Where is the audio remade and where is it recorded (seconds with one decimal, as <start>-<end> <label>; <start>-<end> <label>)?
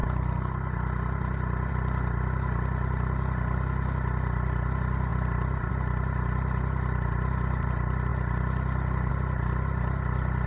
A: 0.0-5.1 recorded; 5.1-5.7 remade; 5.7-8.1 recorded; 8.1-9.1 remade; 9.1-10.5 recorded